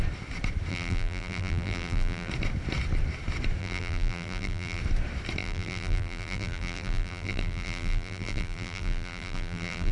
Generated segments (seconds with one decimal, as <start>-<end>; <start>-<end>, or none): 0.7-2.3; 3.6-4.8; 5.4-9.9